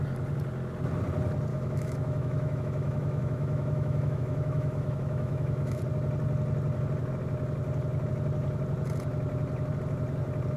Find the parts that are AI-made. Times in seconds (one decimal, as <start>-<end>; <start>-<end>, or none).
1.5-5.8